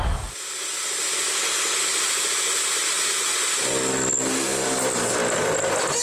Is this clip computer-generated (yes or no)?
no